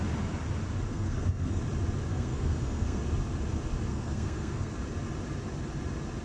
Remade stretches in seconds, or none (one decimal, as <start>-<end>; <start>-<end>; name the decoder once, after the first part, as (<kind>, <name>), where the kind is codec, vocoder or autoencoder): 0.9-1.6 (codec, SNAC); 2.1-3.0; 3.9-4.7